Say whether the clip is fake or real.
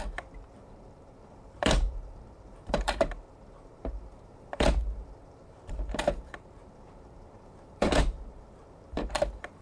fake